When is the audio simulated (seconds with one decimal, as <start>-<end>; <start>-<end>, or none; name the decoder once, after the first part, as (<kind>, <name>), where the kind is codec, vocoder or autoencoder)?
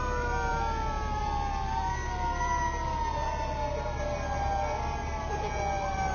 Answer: none